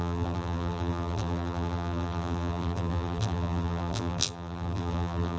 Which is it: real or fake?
fake